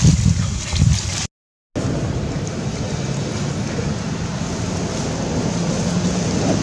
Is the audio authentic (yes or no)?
yes